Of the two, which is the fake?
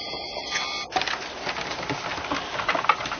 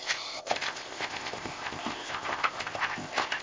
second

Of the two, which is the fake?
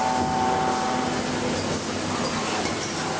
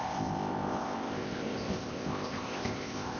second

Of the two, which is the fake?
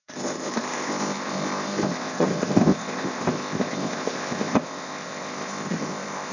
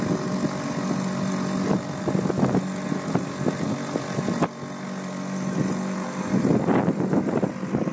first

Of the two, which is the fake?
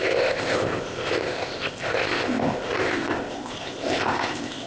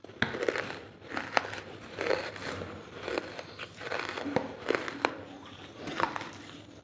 first